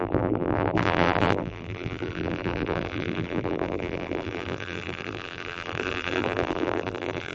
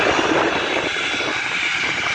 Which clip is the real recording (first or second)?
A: second